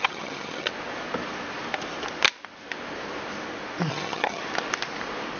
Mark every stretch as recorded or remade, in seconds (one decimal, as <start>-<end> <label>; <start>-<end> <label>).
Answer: 0.0-0.7 remade; 0.7-3.9 recorded; 3.9-4.4 remade; 4.4-5.4 recorded